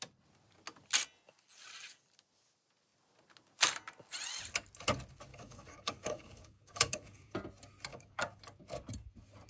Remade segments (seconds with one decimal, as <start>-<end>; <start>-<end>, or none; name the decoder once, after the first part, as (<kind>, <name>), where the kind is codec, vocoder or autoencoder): 5.3-7.3 (codec, DAC); 7.9-8.4